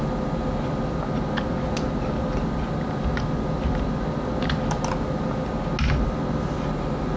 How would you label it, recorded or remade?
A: recorded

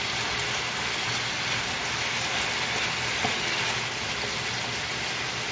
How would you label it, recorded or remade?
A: recorded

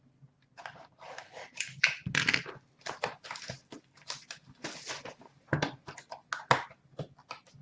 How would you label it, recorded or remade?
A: recorded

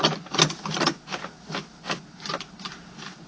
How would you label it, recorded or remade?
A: recorded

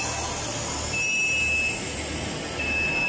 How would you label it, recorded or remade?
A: recorded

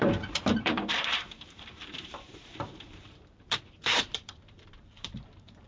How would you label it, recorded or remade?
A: remade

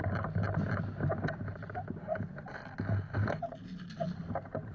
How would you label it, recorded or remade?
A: recorded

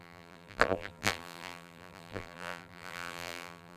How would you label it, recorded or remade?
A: remade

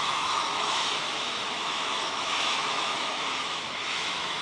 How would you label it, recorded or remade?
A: remade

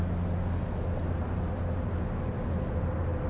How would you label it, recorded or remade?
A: recorded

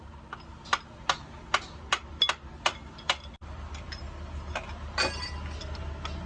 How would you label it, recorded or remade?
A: recorded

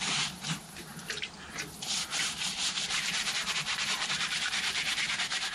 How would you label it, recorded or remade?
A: remade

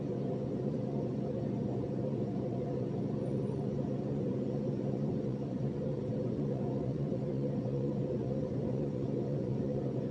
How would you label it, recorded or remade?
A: remade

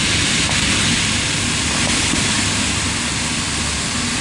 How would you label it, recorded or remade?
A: recorded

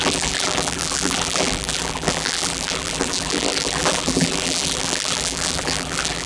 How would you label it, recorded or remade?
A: remade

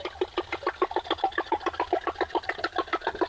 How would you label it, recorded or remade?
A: recorded